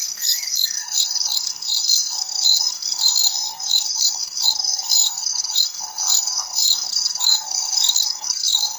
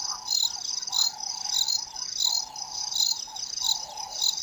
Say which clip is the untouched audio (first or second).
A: second